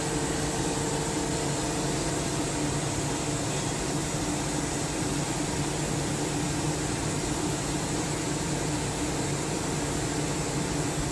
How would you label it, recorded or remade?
recorded